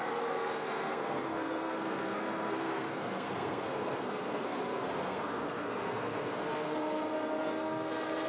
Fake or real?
fake